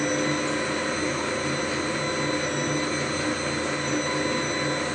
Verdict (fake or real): real